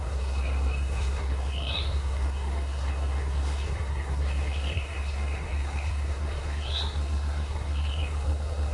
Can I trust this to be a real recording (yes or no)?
no